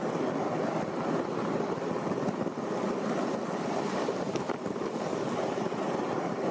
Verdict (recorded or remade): recorded